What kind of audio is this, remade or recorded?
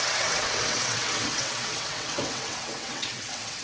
remade